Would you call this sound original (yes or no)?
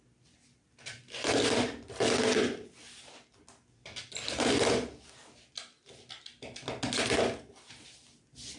yes